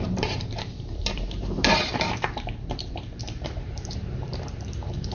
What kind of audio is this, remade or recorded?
remade